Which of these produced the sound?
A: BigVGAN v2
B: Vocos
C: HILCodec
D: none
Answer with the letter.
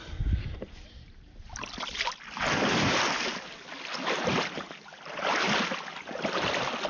D